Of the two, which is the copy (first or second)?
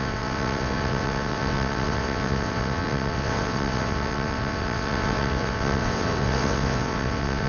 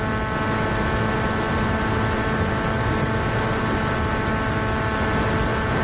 first